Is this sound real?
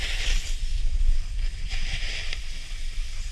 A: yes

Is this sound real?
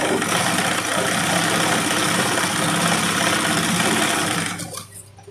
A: yes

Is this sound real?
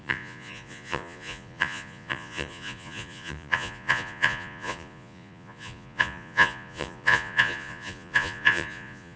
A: no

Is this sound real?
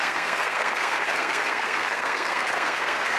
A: no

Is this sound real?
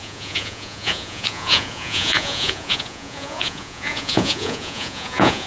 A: no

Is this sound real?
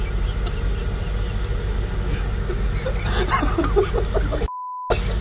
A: yes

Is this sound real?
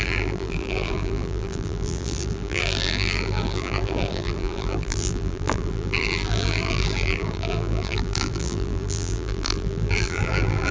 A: no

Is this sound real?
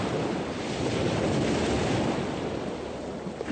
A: yes